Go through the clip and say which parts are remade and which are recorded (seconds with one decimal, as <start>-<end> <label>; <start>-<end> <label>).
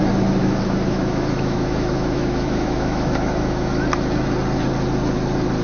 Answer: 0.0-0.4 recorded; 0.4-3.7 remade; 3.7-5.6 recorded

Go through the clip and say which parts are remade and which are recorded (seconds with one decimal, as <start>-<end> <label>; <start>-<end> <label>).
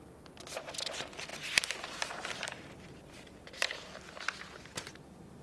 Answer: 0.0-5.4 recorded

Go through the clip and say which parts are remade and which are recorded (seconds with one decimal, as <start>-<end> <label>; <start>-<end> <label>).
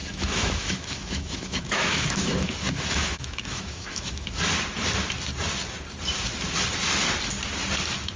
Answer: 0.0-4.4 remade; 4.4-8.2 recorded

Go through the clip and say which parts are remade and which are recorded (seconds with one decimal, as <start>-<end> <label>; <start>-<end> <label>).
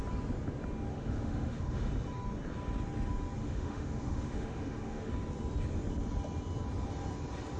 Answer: 0.0-0.9 recorded; 0.9-1.9 remade; 1.9-3.4 recorded; 3.4-5.1 remade; 5.1-7.6 recorded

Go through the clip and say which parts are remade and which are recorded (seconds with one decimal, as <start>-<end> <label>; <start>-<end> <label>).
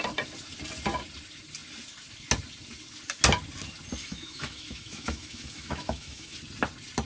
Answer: 0.0-4.0 recorded; 4.0-6.4 remade; 6.4-7.1 recorded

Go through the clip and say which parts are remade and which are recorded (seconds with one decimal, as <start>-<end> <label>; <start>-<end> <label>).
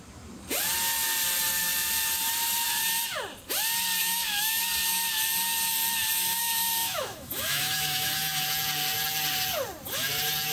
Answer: 0.0-4.0 recorded; 4.0-4.6 remade; 4.6-6.4 recorded; 6.4-8.4 remade; 8.4-10.5 recorded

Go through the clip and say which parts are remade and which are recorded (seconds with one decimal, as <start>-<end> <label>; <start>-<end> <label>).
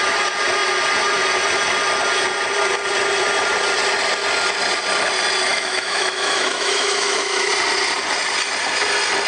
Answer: 0.0-5.5 recorded; 5.5-7.5 remade; 7.5-9.3 recorded